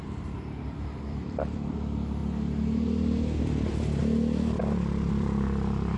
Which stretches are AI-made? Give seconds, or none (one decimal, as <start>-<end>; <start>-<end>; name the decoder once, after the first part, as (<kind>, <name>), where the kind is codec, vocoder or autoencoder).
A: 0.0-2.2 (vocoder, BigVGAN v2); 3.4-4.0; 4.6-6.0